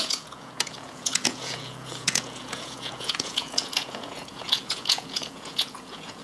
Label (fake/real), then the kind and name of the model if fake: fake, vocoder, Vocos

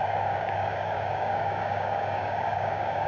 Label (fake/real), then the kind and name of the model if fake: fake, codec, DAC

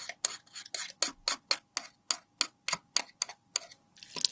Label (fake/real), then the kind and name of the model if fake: real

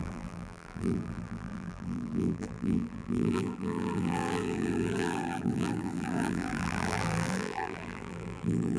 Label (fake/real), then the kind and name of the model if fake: fake, vocoder, BigVGAN v2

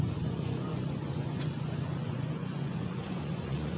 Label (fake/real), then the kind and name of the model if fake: fake, vocoder, Vocos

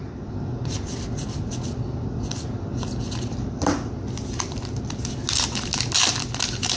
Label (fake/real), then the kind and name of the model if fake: real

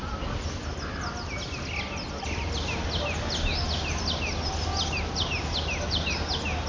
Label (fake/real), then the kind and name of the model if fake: real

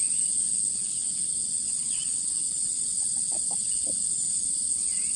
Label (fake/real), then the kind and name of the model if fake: real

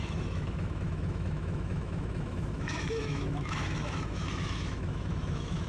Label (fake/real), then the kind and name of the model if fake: fake, autoencoder, DAC-VAE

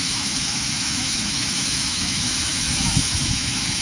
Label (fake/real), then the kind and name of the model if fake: fake, autoencoder, DAC-VAE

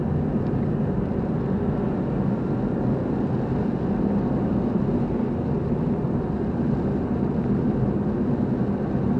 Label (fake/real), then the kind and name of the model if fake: real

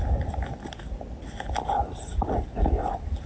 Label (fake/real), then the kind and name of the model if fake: real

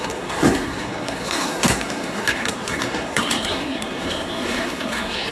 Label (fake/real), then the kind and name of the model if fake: fake, codec, SNAC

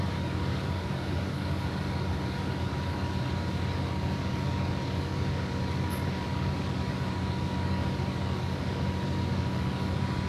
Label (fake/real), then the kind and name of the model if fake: fake, codec, DAC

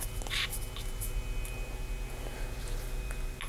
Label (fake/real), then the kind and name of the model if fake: real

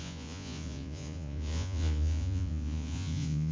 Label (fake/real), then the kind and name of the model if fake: fake, vocoder, Vocos